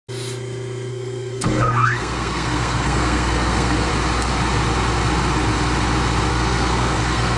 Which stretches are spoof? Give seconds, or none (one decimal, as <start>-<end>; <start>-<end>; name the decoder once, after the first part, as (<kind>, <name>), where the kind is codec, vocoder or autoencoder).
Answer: 0.9-3.9 (codec, SNAC); 6.3-7.4